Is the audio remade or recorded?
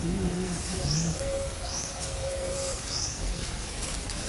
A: remade